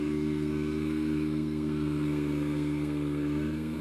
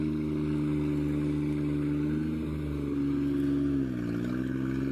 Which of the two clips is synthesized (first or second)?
first